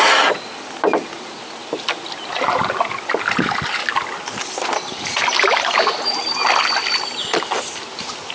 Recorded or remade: recorded